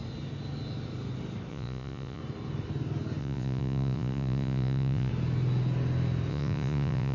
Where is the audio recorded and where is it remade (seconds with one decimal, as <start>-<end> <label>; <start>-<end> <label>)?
0.0-1.5 recorded; 1.5-2.2 remade; 2.2-3.2 recorded; 3.2-5.1 remade; 5.1-6.3 recorded; 6.3-7.1 remade